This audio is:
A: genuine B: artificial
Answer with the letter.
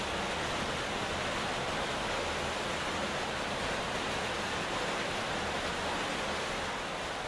A